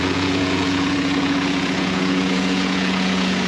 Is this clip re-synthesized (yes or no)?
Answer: yes